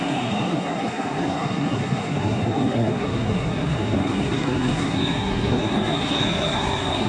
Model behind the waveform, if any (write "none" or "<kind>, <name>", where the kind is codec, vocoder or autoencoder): codec, SNAC